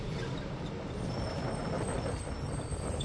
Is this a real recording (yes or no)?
yes